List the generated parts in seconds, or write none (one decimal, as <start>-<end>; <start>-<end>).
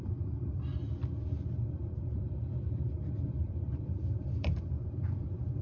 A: 0.0-0.7; 1.7-5.6